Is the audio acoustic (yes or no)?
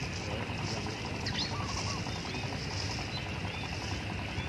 yes